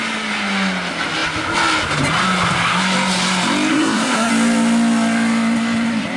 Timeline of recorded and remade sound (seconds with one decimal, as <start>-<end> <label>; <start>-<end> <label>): 0.0-3.7 recorded; 3.7-4.3 remade; 4.3-6.2 recorded